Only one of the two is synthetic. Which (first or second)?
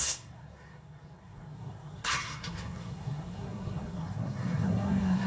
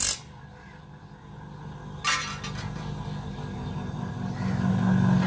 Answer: first